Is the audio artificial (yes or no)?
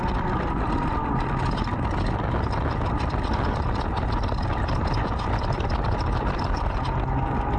yes